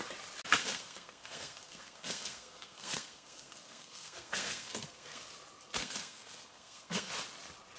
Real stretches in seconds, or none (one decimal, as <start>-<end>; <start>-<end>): 0.0-0.6; 5.3-5.8; 7.1-7.8